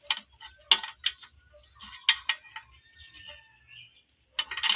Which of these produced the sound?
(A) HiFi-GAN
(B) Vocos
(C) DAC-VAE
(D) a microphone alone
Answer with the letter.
D